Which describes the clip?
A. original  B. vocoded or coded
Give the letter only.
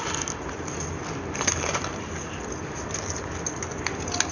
A